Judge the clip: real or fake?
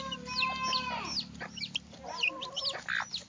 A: real